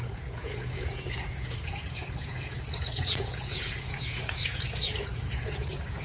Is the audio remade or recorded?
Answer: remade